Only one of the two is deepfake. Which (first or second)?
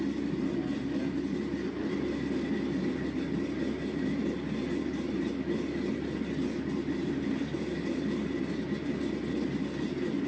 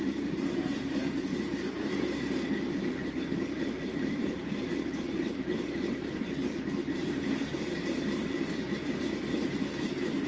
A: second